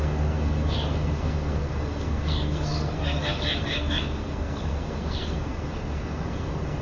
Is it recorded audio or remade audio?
remade